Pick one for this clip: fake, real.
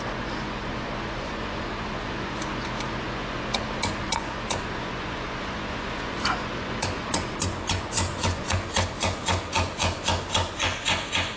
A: fake